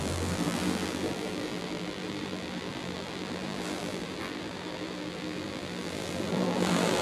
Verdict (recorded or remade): remade